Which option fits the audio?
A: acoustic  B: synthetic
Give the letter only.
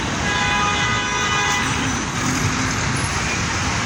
A